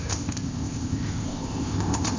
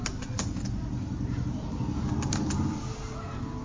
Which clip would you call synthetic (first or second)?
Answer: first